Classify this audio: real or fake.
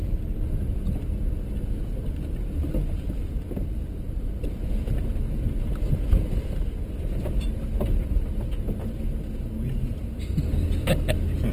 real